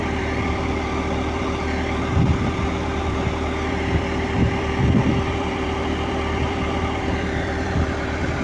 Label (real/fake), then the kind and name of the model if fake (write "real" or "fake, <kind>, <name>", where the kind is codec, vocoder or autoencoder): fake, vocoder, BigVGAN v2